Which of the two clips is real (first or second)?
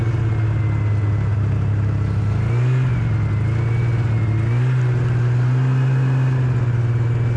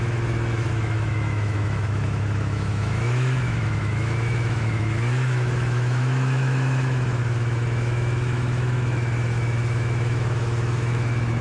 first